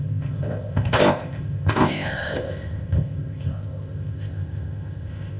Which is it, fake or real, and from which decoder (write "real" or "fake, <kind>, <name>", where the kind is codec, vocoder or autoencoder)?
fake, codec, ZipCodec